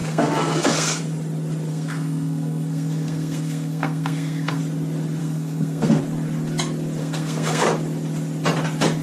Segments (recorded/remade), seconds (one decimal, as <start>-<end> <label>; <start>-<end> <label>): 0.0-1.0 remade; 1.0-1.7 recorded; 1.7-4.6 remade; 4.6-5.2 recorded; 5.2-6.0 remade; 6.0-7.0 recorded; 7.0-7.7 remade; 7.7-9.0 recorded